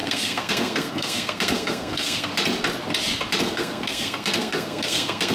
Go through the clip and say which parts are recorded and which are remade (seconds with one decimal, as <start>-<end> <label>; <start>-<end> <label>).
0.0-2.3 remade; 2.3-3.4 recorded; 3.4-5.3 remade